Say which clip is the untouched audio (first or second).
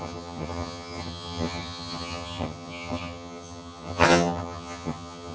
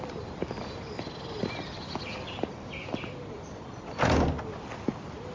second